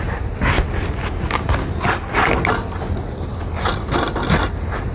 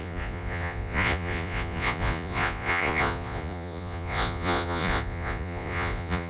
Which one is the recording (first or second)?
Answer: first